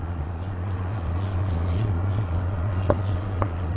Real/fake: fake